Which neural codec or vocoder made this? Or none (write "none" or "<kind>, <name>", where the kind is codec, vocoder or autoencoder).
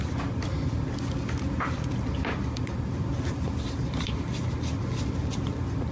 vocoder, BigVGAN v2